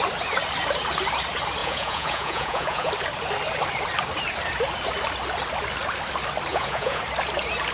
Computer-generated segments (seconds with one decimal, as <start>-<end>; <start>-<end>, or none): 1.6-2.9; 6.5-7.0